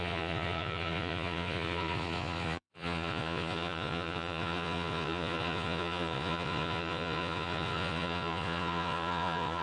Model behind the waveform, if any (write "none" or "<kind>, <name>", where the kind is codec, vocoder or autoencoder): vocoder, Vocos